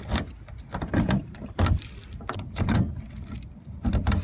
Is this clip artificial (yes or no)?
no